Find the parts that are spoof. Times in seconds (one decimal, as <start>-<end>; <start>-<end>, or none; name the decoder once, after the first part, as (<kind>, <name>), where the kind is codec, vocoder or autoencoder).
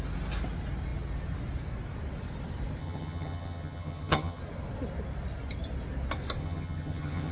2.8-4.4 (vocoder, HiFi-GAN); 6.4-7.3